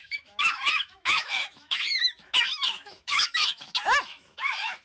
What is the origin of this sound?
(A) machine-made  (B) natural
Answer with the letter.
A